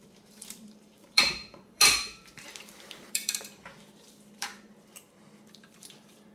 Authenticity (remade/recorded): remade